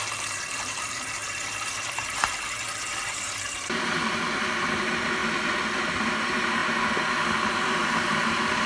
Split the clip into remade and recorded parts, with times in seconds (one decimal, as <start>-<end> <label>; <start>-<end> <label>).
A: 0.0-5.2 remade; 5.2-5.8 recorded; 5.8-6.6 remade; 6.6-7.3 recorded; 7.3-8.7 remade